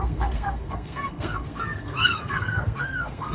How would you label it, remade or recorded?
remade